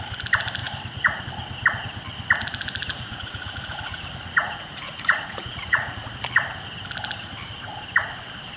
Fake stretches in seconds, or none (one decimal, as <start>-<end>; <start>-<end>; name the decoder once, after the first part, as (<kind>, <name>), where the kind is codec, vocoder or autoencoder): 0.6-1.2 (vocoder, Vocos); 2.9-6.1